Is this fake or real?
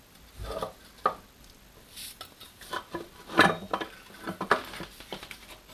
real